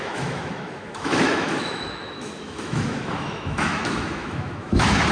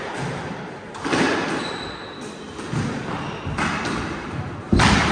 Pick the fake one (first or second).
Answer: first